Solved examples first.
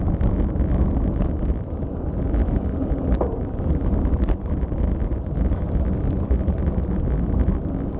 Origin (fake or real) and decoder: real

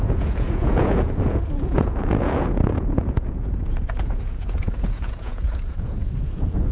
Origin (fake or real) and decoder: fake, vocoder, Vocos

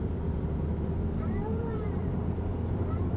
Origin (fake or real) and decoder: fake, vocoder, BigVGAN v2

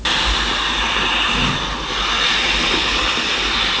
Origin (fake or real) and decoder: real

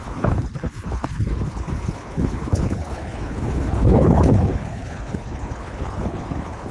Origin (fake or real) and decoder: fake, codec, HILCodec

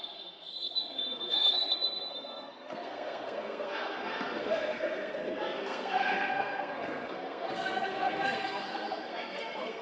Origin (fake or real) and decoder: fake, codec, SNAC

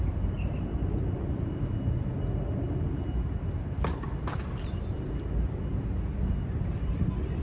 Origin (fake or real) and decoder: real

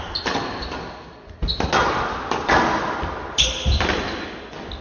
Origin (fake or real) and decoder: real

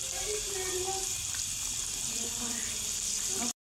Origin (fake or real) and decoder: real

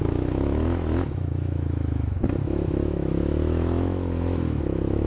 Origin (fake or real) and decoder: fake, autoencoder, DAC-VAE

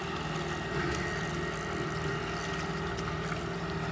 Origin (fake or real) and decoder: real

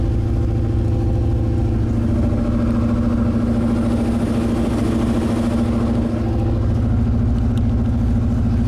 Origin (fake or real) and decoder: real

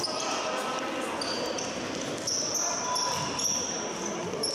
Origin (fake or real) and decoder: real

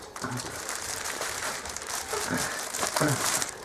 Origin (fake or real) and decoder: fake, vocoder, BigVGAN v2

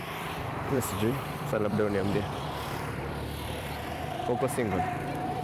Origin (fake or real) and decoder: fake, vocoder, BigVGAN v2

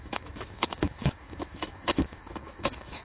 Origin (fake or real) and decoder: fake, autoencoder, DAC-VAE